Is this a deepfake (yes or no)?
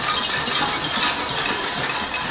no